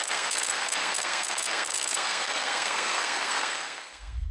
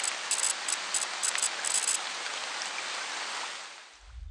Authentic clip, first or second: second